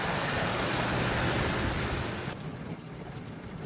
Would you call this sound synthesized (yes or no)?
no